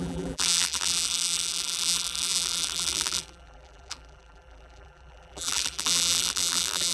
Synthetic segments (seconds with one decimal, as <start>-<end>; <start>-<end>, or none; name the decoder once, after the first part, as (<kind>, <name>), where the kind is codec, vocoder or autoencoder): 0.0-6.9 (vocoder, BigVGAN v2)